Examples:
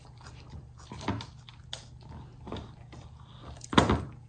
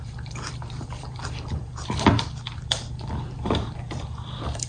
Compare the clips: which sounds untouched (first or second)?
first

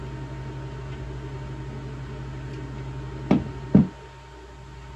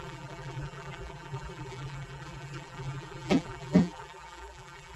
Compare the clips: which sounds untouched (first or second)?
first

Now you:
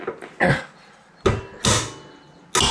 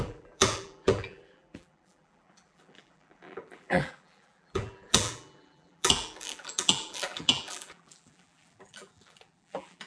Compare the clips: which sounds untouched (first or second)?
first